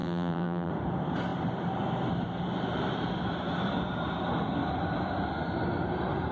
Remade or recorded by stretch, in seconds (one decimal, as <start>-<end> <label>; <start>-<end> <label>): 0.0-0.7 remade; 0.7-6.3 recorded